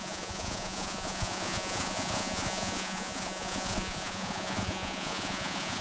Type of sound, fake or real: fake